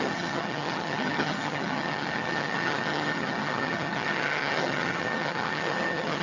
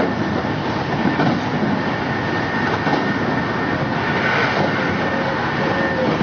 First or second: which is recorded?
second